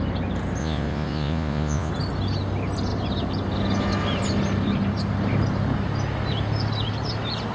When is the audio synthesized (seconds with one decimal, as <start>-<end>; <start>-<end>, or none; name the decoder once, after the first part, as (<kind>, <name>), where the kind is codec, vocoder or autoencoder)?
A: 0.6-1.9 (vocoder, Vocos)